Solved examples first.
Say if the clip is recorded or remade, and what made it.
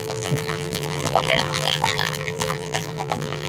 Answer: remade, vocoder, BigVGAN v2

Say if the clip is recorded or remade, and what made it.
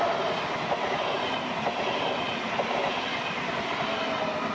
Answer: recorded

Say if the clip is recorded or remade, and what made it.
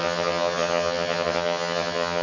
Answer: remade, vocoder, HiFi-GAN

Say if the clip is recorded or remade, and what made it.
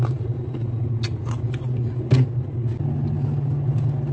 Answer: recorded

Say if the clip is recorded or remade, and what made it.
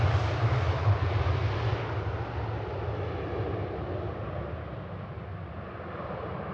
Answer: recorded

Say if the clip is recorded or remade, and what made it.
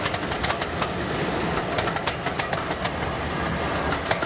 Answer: recorded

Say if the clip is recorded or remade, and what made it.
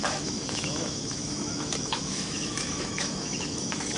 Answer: remade, autoencoder, DAC-VAE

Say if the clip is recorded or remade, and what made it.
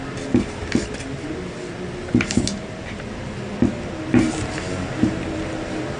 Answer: recorded